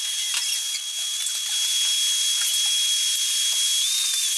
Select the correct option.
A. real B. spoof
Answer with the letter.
A